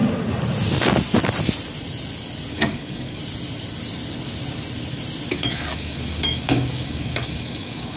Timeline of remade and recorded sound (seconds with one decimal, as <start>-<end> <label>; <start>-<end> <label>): 0.0-2.5 recorded; 2.5-3.2 remade; 3.2-5.3 recorded; 5.3-8.0 remade